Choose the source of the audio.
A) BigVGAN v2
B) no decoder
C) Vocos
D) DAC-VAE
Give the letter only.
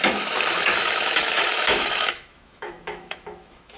D